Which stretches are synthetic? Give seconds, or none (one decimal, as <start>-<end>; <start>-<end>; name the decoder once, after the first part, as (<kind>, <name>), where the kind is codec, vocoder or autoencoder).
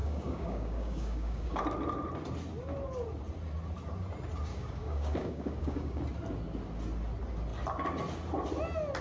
0.0-1.6 (codec, DAC); 4.5-6.0